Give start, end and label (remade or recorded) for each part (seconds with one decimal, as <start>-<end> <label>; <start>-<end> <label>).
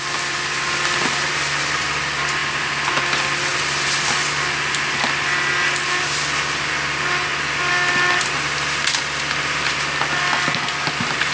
0.0-11.3 recorded